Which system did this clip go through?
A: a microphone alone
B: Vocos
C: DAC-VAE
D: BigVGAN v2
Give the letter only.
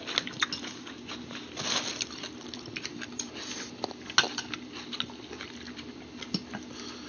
A